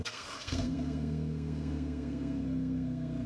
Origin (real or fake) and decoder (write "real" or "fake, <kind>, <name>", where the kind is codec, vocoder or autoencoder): fake, codec, SNAC